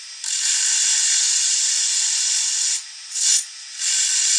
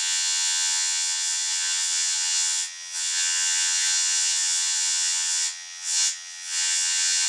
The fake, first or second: second